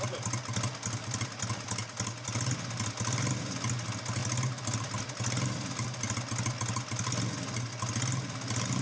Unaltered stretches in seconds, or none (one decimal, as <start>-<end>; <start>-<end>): 0.0-8.8